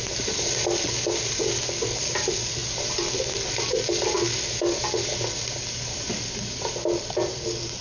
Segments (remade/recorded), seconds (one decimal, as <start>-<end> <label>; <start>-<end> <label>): 0.0-7.8 recorded